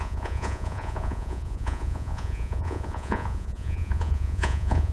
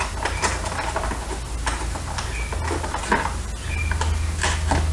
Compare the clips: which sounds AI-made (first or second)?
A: first